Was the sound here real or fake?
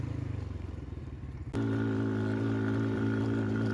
real